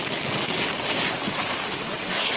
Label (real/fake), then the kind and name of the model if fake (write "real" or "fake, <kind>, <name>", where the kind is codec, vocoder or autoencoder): real